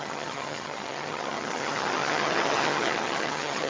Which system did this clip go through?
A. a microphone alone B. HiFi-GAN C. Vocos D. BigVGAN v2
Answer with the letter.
B